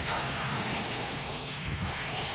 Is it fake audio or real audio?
fake